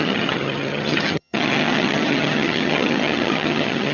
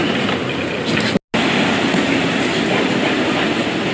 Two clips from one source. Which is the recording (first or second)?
second